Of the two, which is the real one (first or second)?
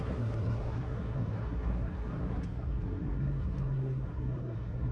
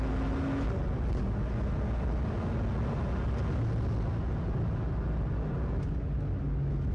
second